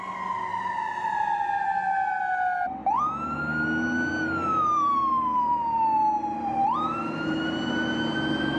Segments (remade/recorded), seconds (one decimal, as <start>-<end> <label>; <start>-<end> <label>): 0.0-0.5 recorded; 0.5-2.2 remade; 2.2-4.5 recorded; 4.5-7.7 remade; 7.7-8.6 recorded